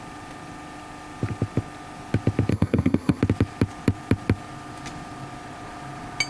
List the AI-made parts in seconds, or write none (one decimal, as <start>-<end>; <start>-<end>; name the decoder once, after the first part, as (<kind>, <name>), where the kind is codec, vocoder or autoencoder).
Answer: 2.5-3.2 (codec, SNAC)